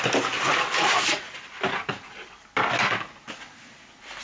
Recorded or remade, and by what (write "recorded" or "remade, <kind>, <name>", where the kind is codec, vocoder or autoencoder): recorded